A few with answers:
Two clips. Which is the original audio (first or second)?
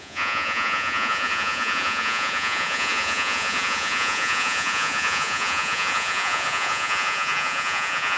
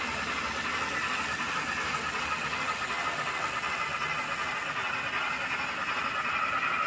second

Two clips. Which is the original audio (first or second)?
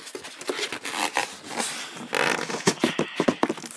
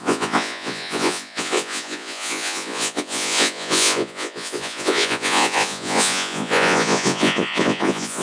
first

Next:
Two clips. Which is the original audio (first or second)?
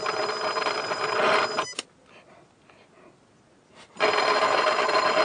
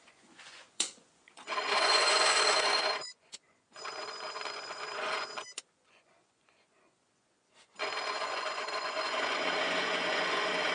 first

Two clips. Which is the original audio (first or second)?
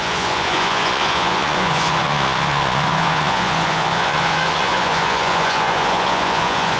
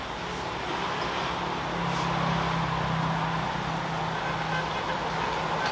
second